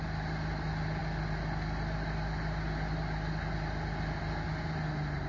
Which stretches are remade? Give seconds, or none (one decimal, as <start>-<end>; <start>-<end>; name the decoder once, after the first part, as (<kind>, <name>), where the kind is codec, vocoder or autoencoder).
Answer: none